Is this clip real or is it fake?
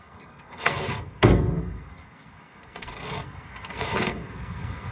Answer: fake